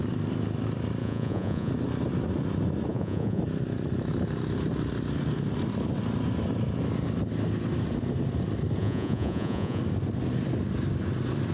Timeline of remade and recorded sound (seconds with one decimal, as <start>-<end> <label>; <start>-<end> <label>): 0.0-1.0 recorded; 1.0-1.7 remade; 1.7-2.9 recorded; 2.9-3.4 remade; 3.4-8.8 recorded; 8.8-9.8 remade; 9.8-11.5 recorded